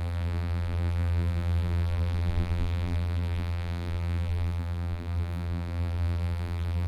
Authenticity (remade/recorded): remade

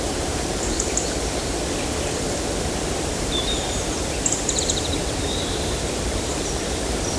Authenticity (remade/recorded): remade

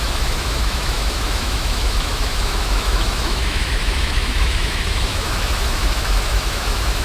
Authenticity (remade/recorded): remade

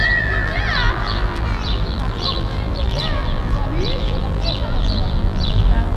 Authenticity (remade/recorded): remade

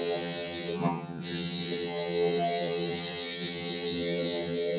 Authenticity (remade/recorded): remade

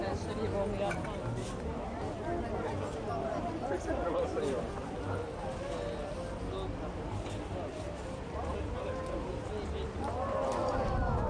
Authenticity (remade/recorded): recorded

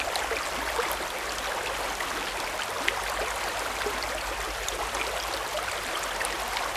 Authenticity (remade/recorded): recorded